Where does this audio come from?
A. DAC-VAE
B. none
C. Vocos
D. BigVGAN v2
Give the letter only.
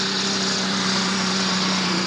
D